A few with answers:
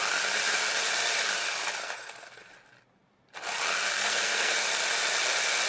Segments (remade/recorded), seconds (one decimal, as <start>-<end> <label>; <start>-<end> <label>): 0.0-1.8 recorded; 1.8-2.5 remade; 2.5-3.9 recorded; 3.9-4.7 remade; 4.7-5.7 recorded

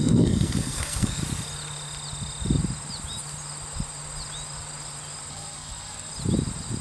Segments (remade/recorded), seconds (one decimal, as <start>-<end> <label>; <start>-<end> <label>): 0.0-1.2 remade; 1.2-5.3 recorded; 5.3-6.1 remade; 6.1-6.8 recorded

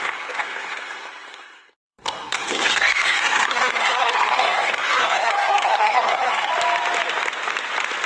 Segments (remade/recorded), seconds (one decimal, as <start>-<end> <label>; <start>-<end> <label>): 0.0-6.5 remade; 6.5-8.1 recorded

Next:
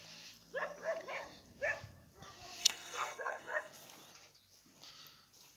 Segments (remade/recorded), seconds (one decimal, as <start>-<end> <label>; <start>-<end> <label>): 0.0-2.6 recorded; 2.6-3.7 remade; 3.7-5.6 recorded

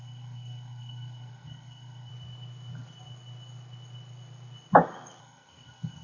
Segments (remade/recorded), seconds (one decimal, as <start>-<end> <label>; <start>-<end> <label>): 0.0-2.1 remade; 2.1-5.2 recorded; 5.2-6.0 remade

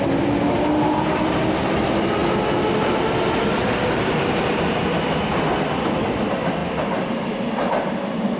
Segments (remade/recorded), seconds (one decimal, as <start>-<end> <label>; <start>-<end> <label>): 0.0-8.4 recorded